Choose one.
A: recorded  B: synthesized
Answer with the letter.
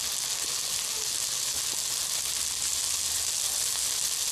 A